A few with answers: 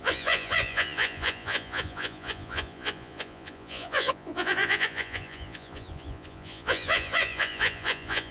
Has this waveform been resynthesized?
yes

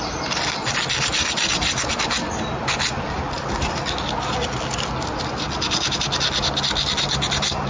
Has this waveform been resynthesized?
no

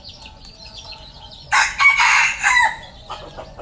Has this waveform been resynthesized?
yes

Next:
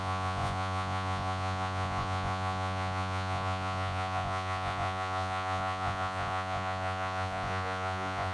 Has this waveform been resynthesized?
yes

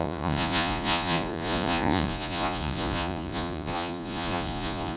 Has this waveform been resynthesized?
yes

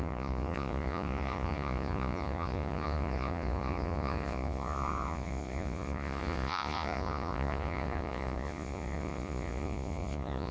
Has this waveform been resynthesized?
yes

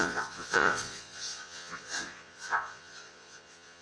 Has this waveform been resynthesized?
yes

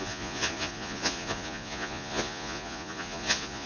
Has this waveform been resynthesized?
yes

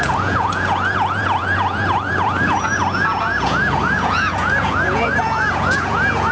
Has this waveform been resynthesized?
yes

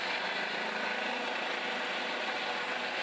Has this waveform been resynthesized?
no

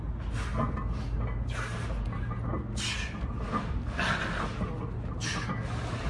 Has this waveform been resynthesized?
no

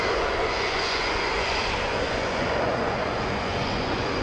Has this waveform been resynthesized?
yes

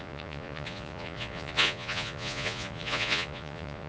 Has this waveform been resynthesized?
yes